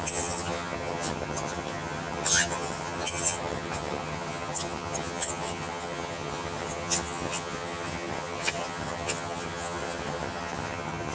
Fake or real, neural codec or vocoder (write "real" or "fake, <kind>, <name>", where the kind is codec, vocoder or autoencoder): fake, vocoder, HiFi-GAN